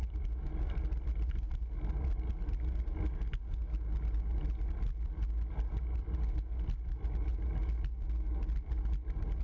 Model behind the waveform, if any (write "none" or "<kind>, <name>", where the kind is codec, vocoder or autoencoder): none